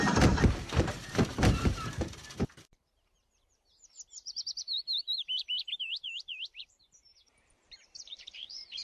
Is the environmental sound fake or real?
fake